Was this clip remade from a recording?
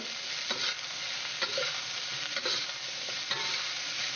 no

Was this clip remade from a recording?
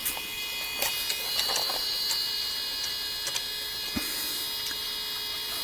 no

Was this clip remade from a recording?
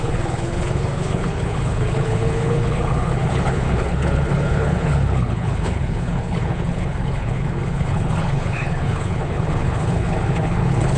yes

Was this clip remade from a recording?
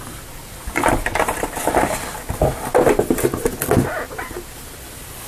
no